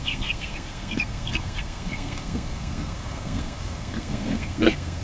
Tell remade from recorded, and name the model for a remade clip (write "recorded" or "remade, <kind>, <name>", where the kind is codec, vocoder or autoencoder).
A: remade, codec, SNAC